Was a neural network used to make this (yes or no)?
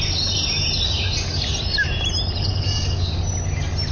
no